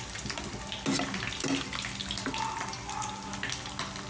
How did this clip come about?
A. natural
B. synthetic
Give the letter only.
A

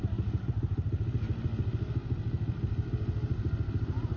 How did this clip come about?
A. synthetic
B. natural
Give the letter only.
B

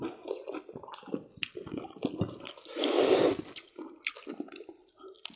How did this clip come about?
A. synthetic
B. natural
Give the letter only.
B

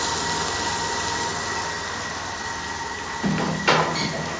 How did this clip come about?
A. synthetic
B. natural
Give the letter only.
B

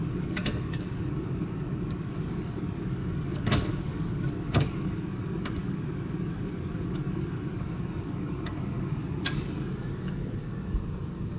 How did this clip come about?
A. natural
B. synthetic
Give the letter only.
B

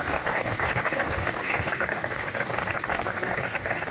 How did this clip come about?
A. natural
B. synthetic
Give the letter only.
B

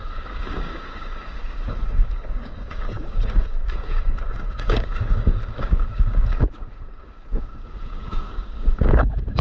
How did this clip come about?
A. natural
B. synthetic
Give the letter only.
B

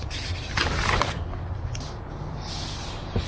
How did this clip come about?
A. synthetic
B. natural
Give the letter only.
B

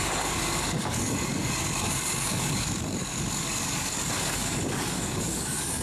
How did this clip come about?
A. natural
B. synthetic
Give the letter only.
B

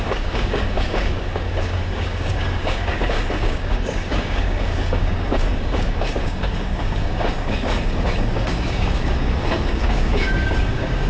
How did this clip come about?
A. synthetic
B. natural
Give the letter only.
A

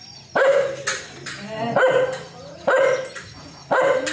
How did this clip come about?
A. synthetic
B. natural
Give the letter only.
B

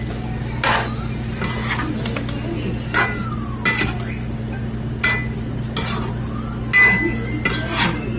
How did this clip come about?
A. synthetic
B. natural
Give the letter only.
B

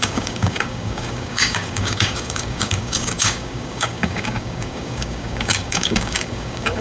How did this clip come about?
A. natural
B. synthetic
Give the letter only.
B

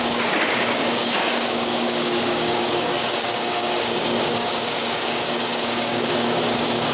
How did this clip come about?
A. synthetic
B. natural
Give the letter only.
A